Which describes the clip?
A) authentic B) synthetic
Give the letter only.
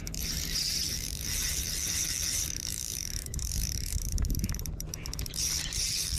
B